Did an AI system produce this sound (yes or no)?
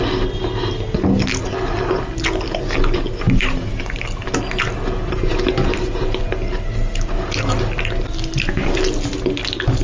no